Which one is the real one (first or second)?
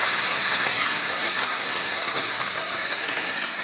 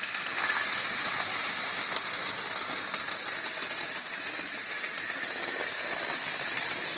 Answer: second